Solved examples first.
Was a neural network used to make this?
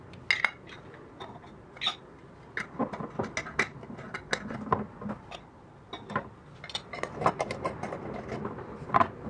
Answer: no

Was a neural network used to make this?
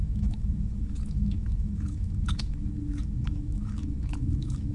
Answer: yes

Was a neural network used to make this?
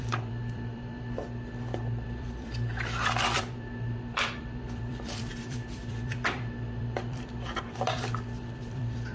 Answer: yes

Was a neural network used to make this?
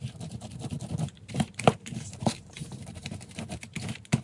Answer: yes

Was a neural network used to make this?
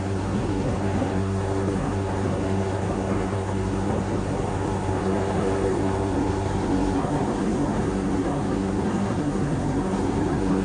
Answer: yes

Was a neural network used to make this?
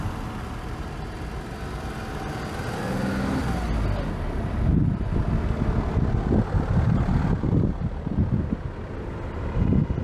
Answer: no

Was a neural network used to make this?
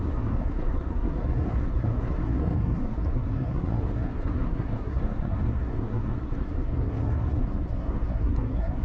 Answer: yes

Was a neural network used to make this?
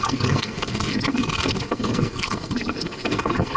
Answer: yes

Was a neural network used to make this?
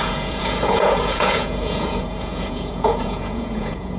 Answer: yes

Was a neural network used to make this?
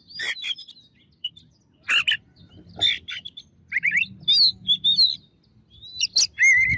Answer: no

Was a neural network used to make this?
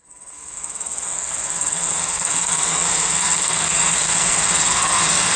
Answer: yes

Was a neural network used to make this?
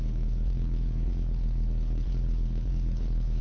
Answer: yes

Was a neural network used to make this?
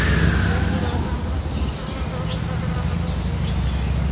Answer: no